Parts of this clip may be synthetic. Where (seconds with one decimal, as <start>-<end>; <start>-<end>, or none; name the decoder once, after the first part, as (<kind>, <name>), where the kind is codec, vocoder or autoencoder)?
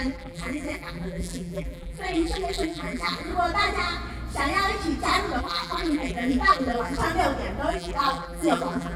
0.0-3.3 (vocoder, BigVGAN v2); 5.4-7.0; 7.7-9.0